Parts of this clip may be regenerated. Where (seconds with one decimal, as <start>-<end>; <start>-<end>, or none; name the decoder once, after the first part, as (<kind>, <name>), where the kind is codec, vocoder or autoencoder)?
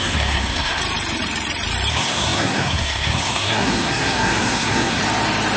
0.0-0.8 (codec, SNAC); 1.9-5.0